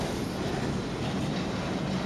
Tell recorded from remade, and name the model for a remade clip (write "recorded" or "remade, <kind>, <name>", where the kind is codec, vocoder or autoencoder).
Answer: recorded